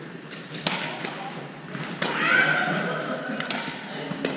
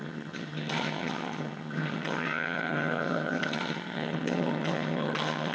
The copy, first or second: second